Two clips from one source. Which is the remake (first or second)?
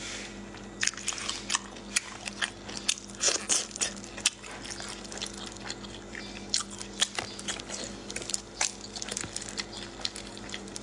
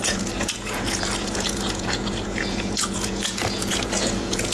second